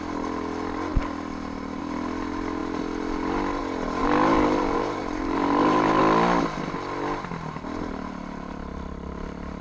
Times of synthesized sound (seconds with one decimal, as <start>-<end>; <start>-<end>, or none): 4.0-6.0